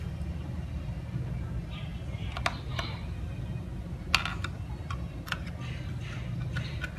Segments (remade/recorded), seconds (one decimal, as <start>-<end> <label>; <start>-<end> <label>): 0.0-7.0 recorded